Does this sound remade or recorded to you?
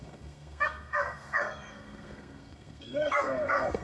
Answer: remade